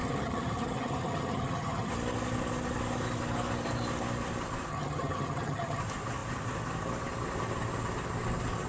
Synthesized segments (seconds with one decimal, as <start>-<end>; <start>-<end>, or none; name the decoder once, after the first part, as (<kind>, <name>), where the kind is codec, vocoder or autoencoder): 0.0-1.9 (vocoder, HiFi-GAN); 4.7-5.8